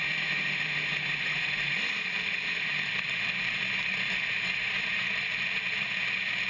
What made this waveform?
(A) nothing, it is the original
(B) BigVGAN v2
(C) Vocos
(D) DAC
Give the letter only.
B